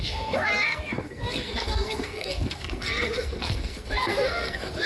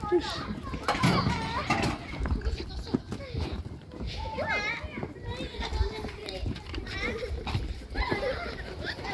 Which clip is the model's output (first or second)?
first